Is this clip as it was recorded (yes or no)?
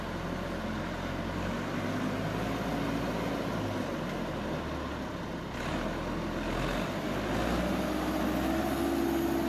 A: yes